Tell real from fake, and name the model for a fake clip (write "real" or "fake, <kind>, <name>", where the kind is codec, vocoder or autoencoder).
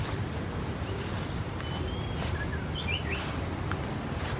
real